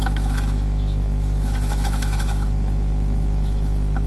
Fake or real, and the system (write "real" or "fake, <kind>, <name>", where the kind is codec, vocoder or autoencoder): fake, autoencoder, DAC-VAE